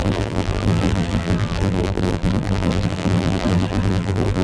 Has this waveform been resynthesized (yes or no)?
yes